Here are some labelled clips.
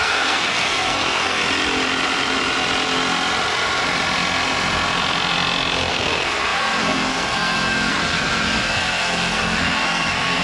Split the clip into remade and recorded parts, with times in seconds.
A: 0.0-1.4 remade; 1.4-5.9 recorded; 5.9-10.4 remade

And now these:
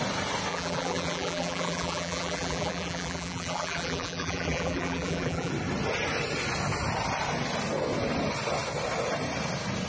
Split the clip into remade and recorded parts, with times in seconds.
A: 0.0-0.5 recorded; 0.5-5.5 remade; 5.5-9.9 recorded

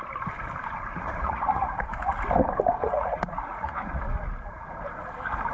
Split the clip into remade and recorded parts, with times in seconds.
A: 0.0-0.9 recorded; 0.9-2.2 remade; 2.2-2.8 recorded; 2.8-4.0 remade; 4.0-5.5 recorded

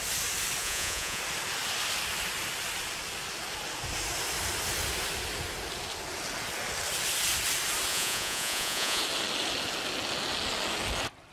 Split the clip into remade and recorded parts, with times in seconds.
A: 0.0-0.6 recorded; 0.6-1.2 remade; 1.2-7.9 recorded; 7.9-9.0 remade; 9.0-11.3 recorded